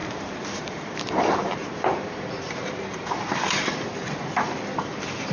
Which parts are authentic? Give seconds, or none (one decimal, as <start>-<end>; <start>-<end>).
1.6-2.6; 3.9-5.3